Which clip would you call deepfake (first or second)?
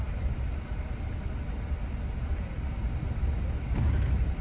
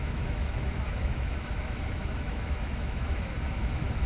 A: second